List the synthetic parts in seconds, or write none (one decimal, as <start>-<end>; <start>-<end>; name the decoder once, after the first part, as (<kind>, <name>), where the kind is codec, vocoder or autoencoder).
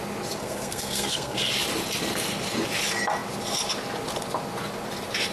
0.4-1.5 (codec, SNAC)